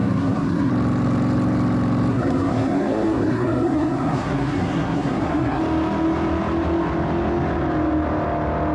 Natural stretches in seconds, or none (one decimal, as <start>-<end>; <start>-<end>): 0.7-2.1; 5.6-8.7